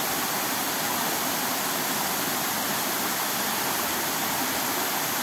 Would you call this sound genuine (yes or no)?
yes